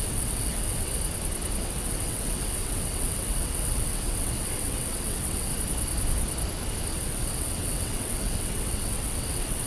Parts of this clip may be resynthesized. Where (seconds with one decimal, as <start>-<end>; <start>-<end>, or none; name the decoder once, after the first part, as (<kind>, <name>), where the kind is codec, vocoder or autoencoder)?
0.0-0.9 (vocoder, WaveNeXt); 1.6-5.5; 6.9-9.7